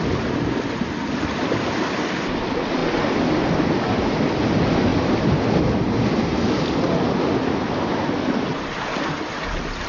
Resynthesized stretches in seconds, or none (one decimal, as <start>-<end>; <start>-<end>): none